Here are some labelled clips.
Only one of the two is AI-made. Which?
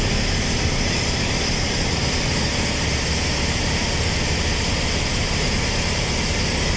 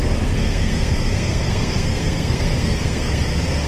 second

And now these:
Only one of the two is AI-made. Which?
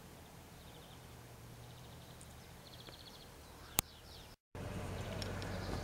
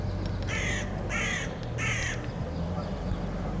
first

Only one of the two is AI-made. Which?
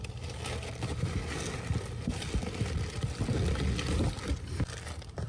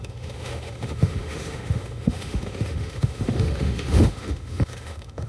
second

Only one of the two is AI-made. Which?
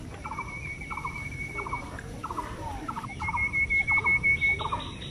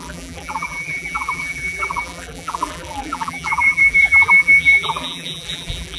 second